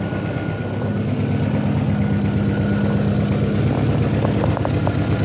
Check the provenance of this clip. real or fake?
real